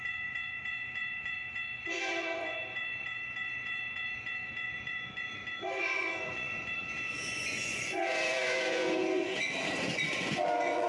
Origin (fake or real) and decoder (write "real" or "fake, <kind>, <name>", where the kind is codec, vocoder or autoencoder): fake, vocoder, Vocos